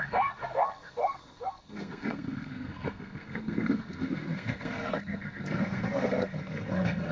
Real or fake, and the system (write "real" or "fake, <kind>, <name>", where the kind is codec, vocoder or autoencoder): fake, codec, SNAC